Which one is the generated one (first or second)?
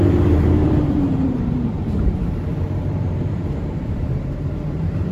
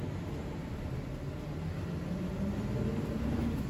first